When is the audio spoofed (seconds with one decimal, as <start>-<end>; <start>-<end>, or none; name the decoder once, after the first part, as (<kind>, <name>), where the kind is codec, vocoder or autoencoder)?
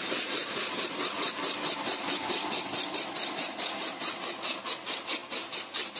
0.4-4.0 (vocoder, BigVGAN v2)